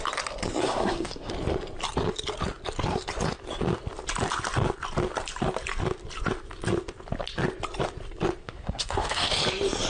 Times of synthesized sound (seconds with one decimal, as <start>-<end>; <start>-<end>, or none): 0.6-1.3; 8.4-9.3